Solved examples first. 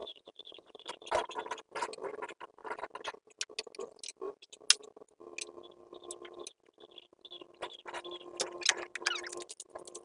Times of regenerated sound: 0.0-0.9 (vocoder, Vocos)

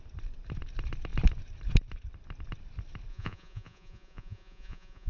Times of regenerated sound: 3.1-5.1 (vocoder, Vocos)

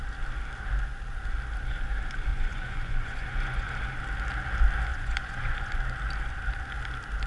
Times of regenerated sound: 2.3-3.7 (vocoder, Vocos); 4.9-5.8

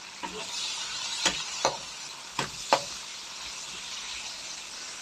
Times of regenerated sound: none